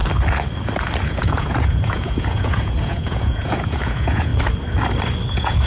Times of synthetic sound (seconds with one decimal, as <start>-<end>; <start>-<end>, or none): 1.0-4.3; 5.3-5.7